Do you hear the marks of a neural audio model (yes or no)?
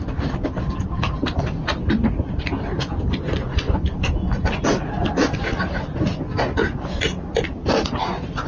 no